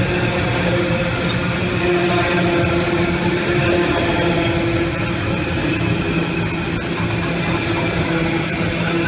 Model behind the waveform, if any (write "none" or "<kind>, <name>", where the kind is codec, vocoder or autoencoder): none